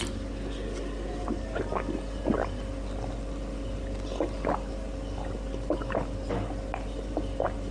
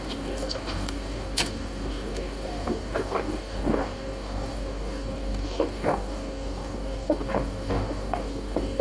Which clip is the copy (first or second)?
second